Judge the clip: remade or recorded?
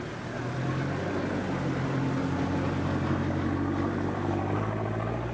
recorded